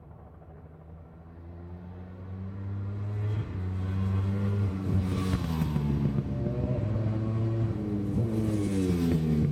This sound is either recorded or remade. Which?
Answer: recorded